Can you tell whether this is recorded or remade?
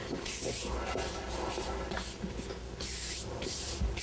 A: recorded